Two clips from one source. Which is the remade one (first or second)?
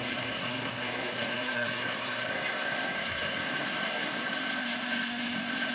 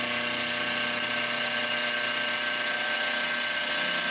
first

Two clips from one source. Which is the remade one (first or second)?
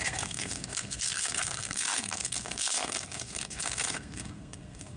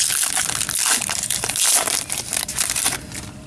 first